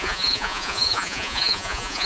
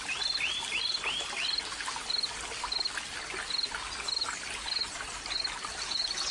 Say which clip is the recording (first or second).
second